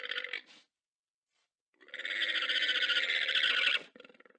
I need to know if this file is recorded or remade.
recorded